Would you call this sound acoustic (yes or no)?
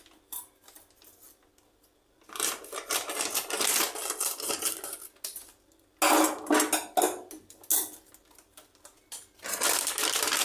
yes